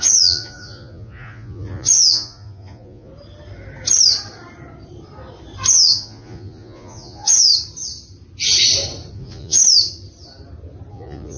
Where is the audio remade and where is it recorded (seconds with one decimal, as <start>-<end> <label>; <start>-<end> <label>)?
0.0-3.1 remade; 3.1-5.7 recorded; 5.7-7.5 remade; 7.5-9.1 recorded; 9.1-9.6 remade; 9.6-10.9 recorded; 10.9-11.4 remade